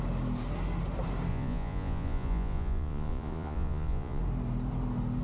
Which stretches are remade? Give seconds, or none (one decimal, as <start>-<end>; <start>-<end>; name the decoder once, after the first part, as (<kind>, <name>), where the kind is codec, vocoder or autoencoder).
1.3-4.2 (vocoder, Vocos)